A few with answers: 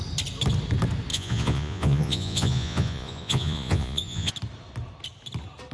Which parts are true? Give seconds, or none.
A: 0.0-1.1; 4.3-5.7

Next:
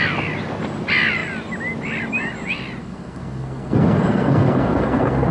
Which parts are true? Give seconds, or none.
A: 0.0-2.8

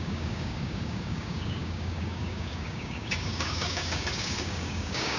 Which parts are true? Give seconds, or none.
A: none

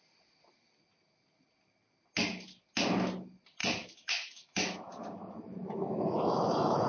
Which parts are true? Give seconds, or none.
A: 0.0-3.6

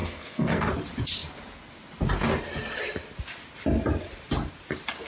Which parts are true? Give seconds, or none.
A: 0.7-5.1